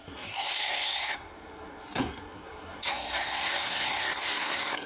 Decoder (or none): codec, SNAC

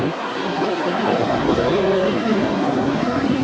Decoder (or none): codec, SNAC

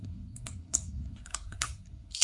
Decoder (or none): codec, SNAC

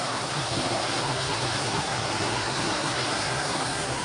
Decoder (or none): codec, SNAC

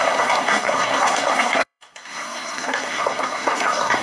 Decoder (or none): codec, SNAC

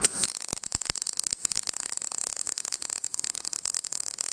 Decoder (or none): codec, SNAC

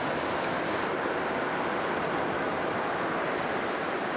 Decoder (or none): none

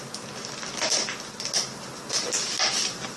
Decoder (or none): none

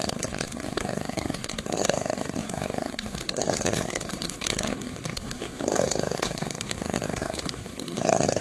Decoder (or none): codec, SNAC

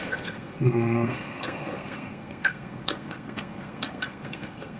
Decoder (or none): codec, SNAC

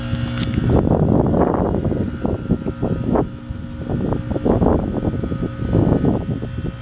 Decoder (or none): none